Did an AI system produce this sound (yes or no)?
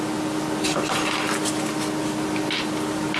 no